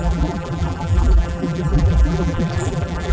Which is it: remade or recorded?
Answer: remade